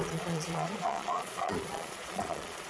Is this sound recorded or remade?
remade